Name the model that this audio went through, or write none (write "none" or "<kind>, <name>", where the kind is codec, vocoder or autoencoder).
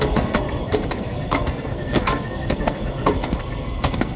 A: codec, SNAC